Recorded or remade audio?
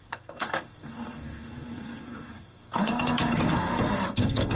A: remade